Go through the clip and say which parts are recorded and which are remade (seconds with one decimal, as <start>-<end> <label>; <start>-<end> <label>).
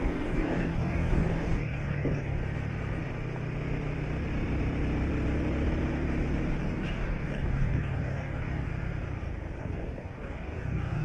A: 0.0-2.4 remade; 2.4-6.6 recorded; 6.6-8.7 remade; 8.7-9.6 recorded; 9.6-11.0 remade